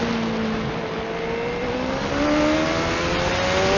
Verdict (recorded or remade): recorded